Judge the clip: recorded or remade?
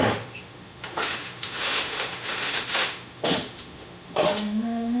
remade